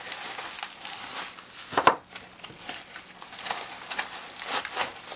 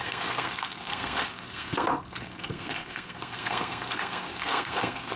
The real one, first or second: first